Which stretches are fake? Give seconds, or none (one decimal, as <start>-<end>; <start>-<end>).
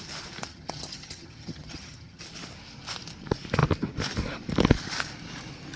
0.5-2.2